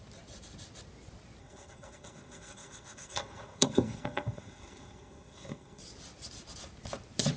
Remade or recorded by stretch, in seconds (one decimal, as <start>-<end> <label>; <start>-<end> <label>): 0.0-1.4 recorded; 1.4-5.8 remade; 5.8-7.4 recorded